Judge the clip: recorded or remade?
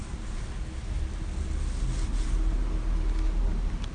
recorded